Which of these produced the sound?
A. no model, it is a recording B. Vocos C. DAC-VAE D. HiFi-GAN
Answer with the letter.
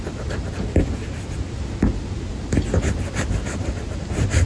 A